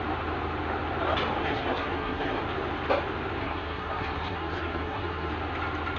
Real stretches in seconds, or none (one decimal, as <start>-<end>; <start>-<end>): 0.0-1.4; 2.4-3.4; 5.3-6.0